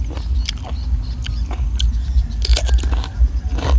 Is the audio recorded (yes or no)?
yes